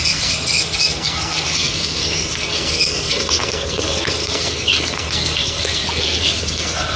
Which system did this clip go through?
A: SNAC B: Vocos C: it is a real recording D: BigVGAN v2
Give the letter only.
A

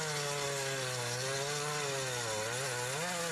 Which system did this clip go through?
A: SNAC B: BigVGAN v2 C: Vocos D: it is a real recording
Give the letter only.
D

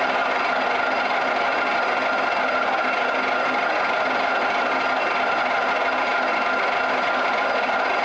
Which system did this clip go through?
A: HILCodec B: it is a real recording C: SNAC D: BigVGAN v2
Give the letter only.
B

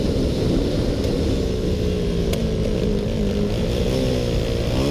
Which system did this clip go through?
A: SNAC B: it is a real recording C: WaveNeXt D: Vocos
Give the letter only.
B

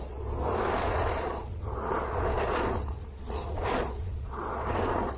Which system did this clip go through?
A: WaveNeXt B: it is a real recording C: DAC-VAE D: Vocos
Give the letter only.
D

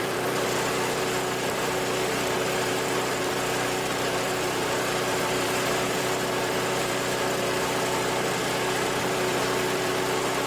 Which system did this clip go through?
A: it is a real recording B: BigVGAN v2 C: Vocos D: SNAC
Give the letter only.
B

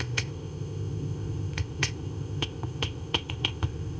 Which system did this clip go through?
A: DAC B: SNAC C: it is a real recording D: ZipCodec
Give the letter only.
D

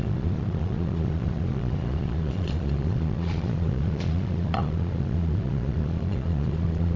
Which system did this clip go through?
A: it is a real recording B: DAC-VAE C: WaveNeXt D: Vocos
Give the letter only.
D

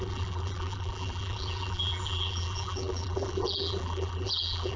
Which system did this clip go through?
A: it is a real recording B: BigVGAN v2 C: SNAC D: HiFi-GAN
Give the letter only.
B